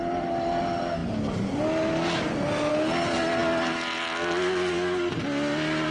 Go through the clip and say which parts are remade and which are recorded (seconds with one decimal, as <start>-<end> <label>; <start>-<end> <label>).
0.0-5.9 recorded